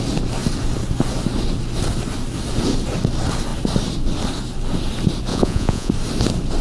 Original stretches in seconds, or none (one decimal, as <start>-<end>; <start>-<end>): 0.0-5.3; 5.9-6.6